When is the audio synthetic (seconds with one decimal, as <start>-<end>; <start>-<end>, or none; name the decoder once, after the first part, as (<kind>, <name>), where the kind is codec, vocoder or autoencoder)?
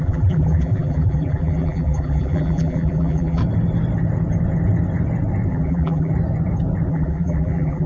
0.0-3.4 (vocoder, BigVGAN v2); 5.5-6.1; 6.9-7.9